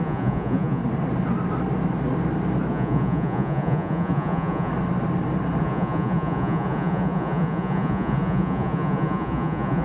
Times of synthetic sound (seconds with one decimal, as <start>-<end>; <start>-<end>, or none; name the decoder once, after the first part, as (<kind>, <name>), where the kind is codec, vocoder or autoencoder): 0.0-0.8 (vocoder, Vocos); 2.7-4.7; 5.6-9.8